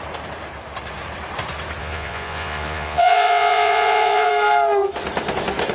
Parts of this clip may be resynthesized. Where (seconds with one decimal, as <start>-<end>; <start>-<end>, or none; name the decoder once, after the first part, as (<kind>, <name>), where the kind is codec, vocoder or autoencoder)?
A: 1.8-4.3 (vocoder, Vocos)

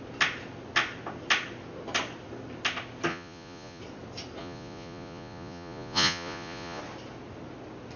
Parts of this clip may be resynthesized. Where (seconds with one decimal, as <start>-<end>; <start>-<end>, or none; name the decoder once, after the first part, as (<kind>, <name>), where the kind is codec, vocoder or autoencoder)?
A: 3.1-3.8 (vocoder, Vocos); 4.4-6.8

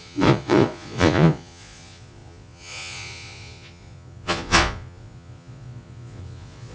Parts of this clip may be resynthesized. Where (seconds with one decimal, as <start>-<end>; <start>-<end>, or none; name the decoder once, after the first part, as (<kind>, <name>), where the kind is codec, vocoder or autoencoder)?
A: 0.0-6.7 (vocoder, Vocos)

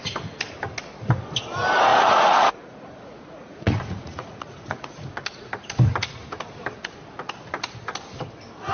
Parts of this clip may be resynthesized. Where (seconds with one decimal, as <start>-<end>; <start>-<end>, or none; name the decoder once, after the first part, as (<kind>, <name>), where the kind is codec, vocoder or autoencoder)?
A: 1.9-5.5 (vocoder, Vocos)

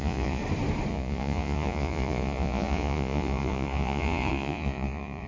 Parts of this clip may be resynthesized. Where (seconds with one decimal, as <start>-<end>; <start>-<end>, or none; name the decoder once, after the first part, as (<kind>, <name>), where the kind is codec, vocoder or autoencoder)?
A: 0.0-0.4 (vocoder, Vocos); 0.9-5.3

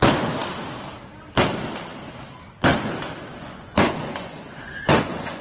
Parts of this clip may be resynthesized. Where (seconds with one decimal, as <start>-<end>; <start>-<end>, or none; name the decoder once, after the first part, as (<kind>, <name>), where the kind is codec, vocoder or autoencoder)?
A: 3.3-5.4 (vocoder, Vocos)